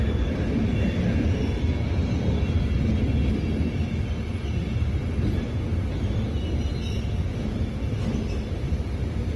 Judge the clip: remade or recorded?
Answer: recorded